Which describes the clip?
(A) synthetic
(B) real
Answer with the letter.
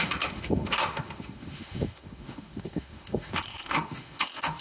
A